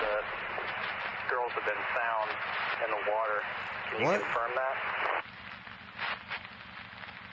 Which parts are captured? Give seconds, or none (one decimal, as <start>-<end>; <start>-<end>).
0.0-7.3